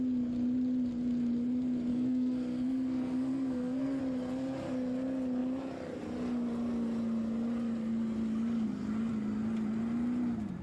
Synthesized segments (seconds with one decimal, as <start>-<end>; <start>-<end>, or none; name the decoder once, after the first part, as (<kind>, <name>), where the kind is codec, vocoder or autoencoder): 1.9-4.0 (codec, SNAC)